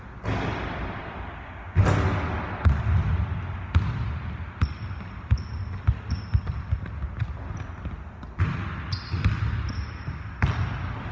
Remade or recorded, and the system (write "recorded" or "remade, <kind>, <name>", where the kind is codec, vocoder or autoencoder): recorded